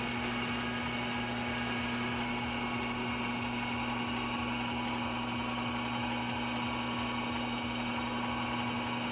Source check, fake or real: real